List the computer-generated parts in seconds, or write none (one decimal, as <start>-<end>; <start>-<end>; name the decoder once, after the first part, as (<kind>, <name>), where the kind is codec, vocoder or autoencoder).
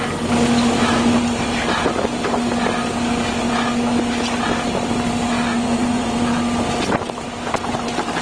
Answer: 5.5-6.1 (vocoder, Vocos)